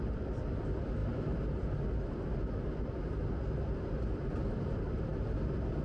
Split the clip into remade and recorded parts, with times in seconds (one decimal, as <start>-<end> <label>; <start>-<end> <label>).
0.0-5.8 recorded